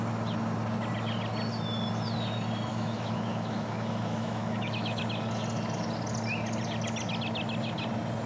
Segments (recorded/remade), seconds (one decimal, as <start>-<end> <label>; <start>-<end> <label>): 0.0-2.7 recorded; 2.7-5.0 remade; 5.0-8.3 recorded